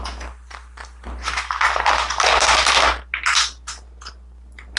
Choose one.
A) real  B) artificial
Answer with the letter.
A